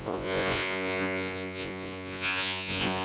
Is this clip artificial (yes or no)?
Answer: yes